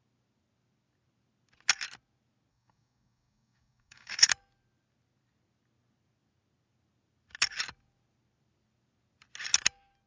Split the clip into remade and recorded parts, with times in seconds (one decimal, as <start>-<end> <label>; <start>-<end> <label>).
0.0-2.5 recorded; 2.5-4.3 remade; 4.3-10.1 recorded